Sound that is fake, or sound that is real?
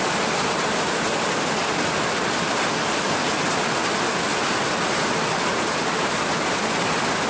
real